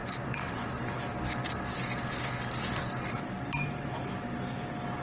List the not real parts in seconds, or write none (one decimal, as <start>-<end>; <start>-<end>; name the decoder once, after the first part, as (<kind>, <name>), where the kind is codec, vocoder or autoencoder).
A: none